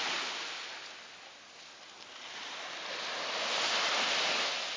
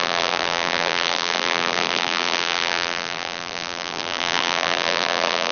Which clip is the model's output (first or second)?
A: second